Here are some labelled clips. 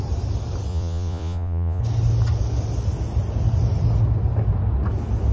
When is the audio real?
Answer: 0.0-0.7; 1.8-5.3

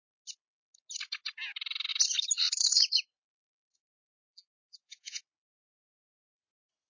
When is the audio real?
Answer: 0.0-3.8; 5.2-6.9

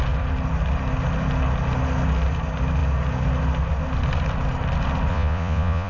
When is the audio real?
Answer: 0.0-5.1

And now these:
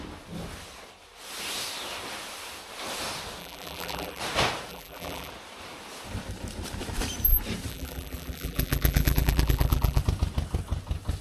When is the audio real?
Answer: 0.0-3.4; 4.2-4.7; 5.3-7.7; 10.0-11.2

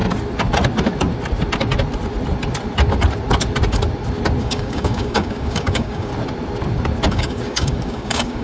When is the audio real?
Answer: 0.0-4.4; 6.1-7.1

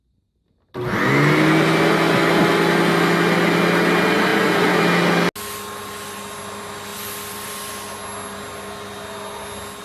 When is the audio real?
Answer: 0.0-4.3; 4.8-6.9; 7.5-9.8

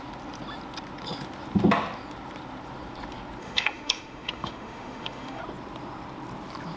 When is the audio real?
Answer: 0.0-3.4; 5.4-6.8

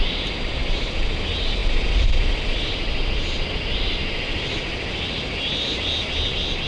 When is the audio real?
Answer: 0.0-6.7